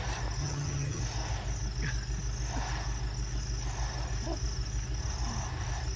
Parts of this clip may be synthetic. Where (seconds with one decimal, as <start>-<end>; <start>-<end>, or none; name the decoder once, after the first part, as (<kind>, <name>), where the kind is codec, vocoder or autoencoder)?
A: 0.4-1.0 (vocoder, HiFi-GAN)